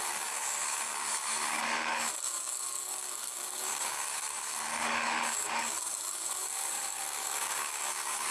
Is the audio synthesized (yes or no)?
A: yes